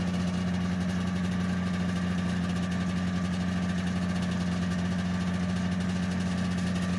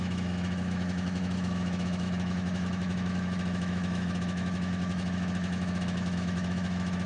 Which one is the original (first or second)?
first